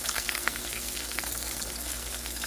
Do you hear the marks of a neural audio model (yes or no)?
yes